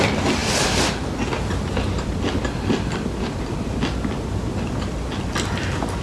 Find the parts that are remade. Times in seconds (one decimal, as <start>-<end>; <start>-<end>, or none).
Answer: none